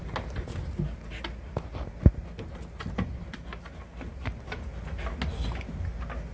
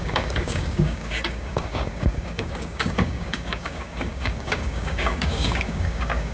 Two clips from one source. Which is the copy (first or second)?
second